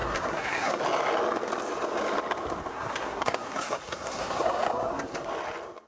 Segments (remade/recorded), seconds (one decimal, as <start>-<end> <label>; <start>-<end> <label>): 0.0-0.8 remade; 0.8-2.7 recorded; 2.7-5.3 remade; 5.3-5.9 recorded